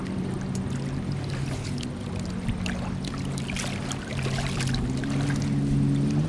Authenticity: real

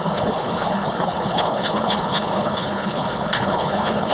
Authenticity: fake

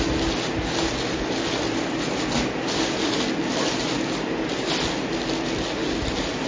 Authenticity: real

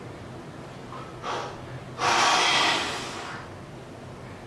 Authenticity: real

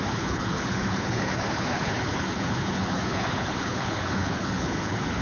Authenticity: fake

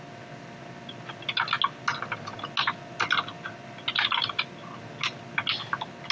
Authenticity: real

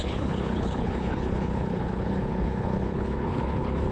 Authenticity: fake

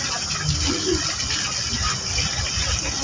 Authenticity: real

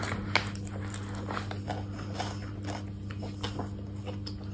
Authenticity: real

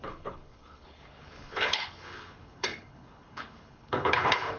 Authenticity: fake